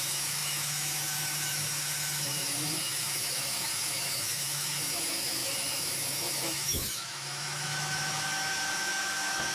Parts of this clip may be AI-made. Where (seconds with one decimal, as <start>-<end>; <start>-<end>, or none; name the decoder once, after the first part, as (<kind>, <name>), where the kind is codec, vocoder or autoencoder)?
0.0-9.5 (autoencoder, DAC-VAE)

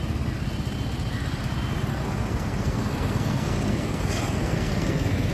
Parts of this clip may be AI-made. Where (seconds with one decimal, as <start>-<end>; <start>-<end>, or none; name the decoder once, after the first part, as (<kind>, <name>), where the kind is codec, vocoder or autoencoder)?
1.9-5.3 (codec, SNAC)

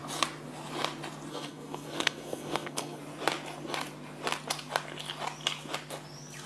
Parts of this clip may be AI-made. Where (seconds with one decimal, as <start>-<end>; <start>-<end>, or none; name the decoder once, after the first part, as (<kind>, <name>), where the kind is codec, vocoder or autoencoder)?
1.3-3.0 (codec, SNAC)

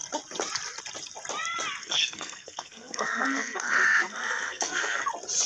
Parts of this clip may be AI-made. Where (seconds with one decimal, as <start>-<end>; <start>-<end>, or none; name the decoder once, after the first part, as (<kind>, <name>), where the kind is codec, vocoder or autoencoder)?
1.8-5.1 (codec, SNAC)